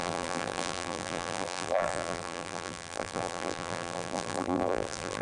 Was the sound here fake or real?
fake